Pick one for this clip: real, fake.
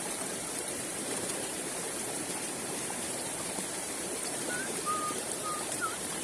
fake